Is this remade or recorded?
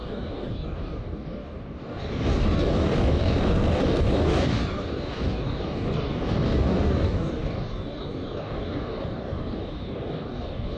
remade